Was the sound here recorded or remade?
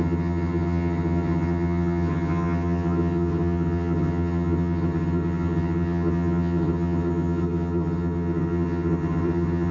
remade